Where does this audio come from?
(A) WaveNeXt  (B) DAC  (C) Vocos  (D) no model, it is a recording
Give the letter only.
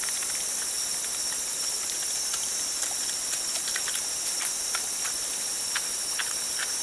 D